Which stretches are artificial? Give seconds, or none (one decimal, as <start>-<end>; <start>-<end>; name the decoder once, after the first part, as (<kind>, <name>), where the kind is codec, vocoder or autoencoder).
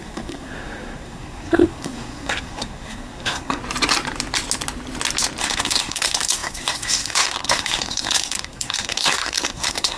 0.0-3.6 (codec, SNAC); 5.4-10.0